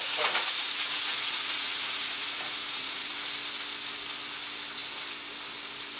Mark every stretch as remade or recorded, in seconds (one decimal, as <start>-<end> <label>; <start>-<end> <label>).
0.0-3.1 remade; 3.1-6.0 recorded